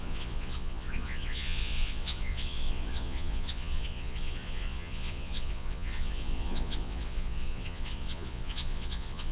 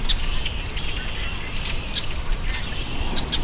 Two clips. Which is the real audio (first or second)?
second